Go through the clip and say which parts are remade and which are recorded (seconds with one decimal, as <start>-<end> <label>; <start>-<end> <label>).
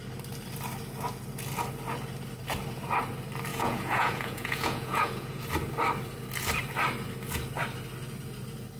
0.0-3.5 recorded; 3.5-5.4 remade; 5.4-8.8 recorded